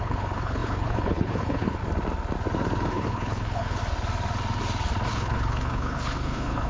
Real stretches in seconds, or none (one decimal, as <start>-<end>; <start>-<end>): 1.8-2.9; 3.8-5.1